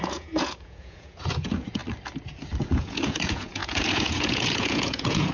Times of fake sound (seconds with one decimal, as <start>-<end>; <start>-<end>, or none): 0.0-1.8; 2.6-5.3